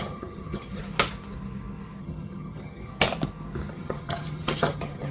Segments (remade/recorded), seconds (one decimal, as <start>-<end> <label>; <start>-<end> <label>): 0.0-0.8 remade; 0.8-2.0 recorded; 2.0-2.9 remade; 2.9-3.7 recorded; 3.7-5.1 remade